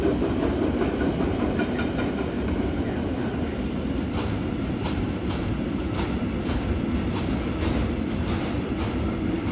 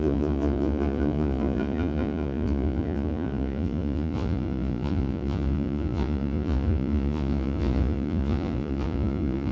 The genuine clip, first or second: first